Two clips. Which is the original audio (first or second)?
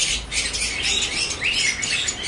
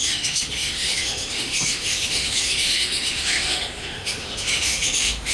first